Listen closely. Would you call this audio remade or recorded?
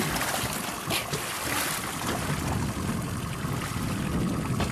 recorded